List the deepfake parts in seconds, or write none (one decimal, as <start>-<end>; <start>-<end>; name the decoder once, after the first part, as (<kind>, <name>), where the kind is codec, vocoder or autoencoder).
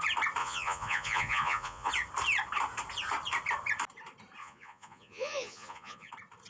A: 0.4-1.9 (vocoder, Vocos); 4.4-6.1